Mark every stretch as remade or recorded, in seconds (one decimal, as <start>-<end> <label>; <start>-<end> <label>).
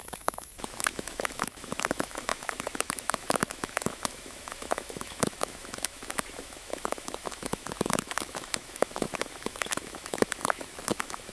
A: 0.0-11.3 remade